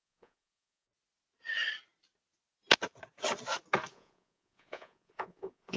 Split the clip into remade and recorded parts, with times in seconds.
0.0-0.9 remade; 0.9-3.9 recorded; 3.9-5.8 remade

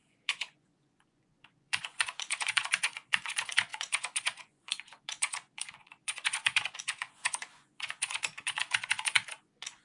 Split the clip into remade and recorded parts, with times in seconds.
0.0-9.8 remade

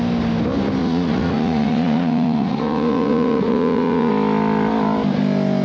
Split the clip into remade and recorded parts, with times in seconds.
0.0-0.8 recorded; 0.8-4.1 remade; 4.1-5.6 recorded

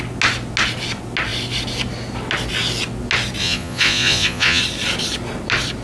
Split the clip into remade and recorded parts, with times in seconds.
0.0-3.4 recorded; 3.4-4.6 remade; 4.6-5.8 recorded

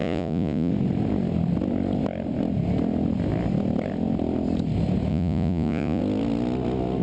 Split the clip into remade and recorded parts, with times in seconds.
0.0-0.7 remade; 0.7-5.1 recorded; 5.1-6.0 remade; 6.0-7.0 recorded

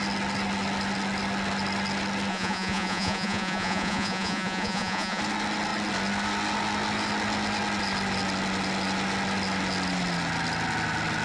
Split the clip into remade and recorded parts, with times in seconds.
0.0-2.3 recorded; 2.3-5.2 remade; 5.2-11.2 recorded